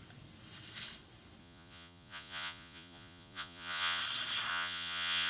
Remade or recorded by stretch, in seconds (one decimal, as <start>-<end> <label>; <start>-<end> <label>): 0.0-1.4 recorded; 1.4-4.0 remade; 4.0-4.5 recorded; 4.5-5.3 remade

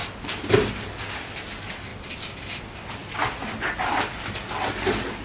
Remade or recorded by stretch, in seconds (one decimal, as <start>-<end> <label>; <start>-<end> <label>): 0.0-0.9 remade; 0.9-5.2 recorded

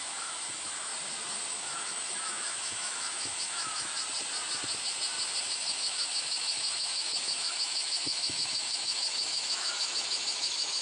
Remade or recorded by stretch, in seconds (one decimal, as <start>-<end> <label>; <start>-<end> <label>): 0.0-0.9 remade; 0.9-1.5 recorded; 1.5-3.9 remade; 3.9-5.4 recorded; 5.4-10.8 remade

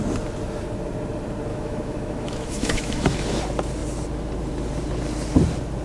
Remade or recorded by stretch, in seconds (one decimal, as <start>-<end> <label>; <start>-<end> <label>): 0.0-1.5 recorded; 1.5-3.4 remade; 3.4-5.8 recorded

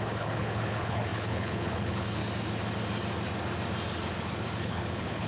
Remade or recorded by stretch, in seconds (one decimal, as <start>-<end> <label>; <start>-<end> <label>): 0.0-2.2 remade; 2.2-4.6 recorded; 4.6-5.3 remade

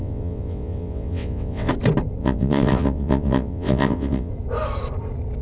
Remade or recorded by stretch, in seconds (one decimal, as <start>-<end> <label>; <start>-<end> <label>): 0.0-1.7 remade; 1.7-2.2 recorded; 2.2-4.3 remade; 4.3-5.4 recorded

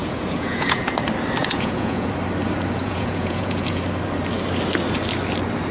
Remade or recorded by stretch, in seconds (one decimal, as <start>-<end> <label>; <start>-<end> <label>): 0.0-0.8 remade; 0.8-1.4 recorded; 1.4-2.1 remade; 2.1-2.8 recorded; 2.8-3.8 remade; 3.8-5.7 recorded